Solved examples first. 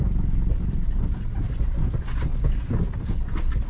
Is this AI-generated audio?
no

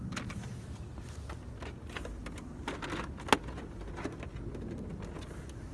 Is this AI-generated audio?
no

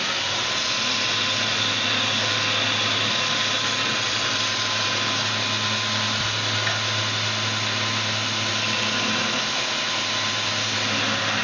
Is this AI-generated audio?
no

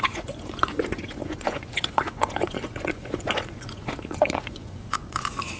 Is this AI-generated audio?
yes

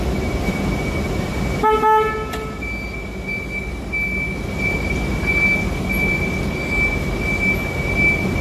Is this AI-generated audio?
no